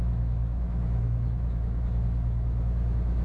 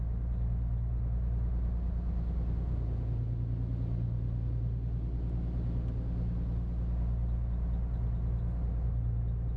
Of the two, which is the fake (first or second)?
first